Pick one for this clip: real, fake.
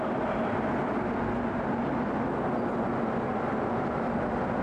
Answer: real